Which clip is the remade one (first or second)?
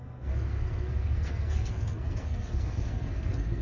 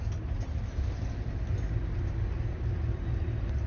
first